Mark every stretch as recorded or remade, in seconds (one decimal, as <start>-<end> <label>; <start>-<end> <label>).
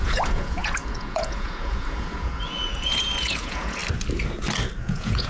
0.0-3.8 remade; 3.8-4.8 recorded; 4.8-5.3 remade